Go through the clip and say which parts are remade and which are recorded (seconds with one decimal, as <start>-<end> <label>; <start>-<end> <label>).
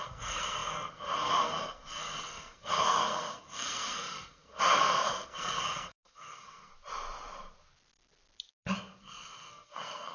0.0-6.7 remade; 6.7-9.0 recorded; 9.0-10.1 remade